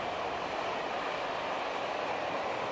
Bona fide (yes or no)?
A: yes